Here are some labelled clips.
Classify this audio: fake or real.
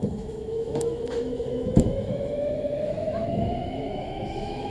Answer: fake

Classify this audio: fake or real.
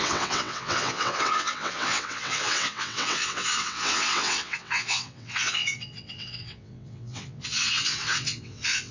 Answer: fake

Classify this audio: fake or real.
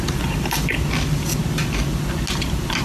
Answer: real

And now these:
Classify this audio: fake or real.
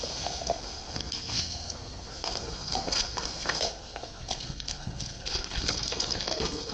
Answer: fake